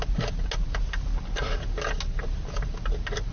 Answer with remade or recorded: recorded